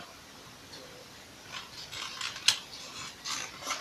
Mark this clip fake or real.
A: real